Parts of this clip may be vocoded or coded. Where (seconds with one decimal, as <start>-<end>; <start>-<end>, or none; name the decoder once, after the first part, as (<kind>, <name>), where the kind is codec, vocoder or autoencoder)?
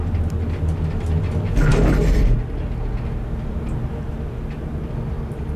none